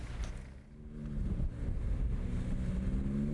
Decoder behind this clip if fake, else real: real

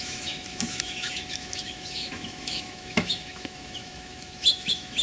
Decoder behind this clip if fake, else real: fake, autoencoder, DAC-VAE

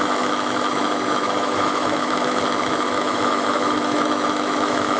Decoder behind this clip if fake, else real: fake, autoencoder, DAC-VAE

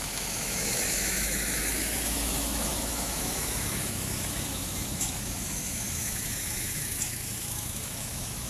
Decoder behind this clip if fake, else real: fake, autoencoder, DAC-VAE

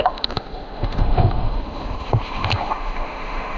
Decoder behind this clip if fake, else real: fake, autoencoder, DAC-VAE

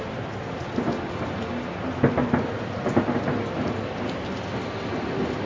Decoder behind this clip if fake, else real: real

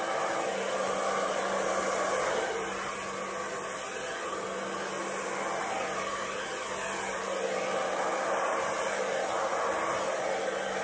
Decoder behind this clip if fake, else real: real